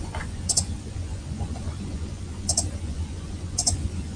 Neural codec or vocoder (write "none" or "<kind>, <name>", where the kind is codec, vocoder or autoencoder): vocoder, Vocos